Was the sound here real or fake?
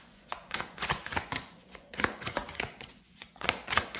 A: fake